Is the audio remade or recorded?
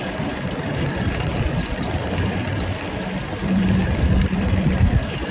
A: remade